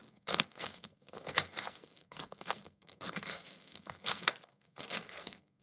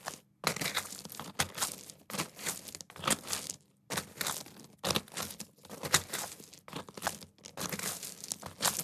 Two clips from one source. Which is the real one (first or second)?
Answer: second